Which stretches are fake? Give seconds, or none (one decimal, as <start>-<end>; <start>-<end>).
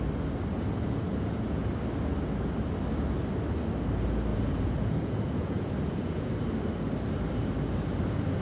1.1-1.7; 4.3-6.3